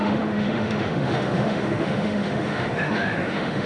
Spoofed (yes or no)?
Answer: yes